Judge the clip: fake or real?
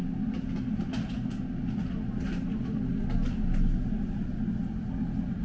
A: real